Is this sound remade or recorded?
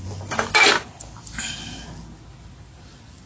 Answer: recorded